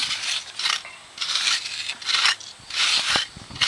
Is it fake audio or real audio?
real